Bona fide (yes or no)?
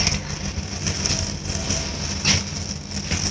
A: yes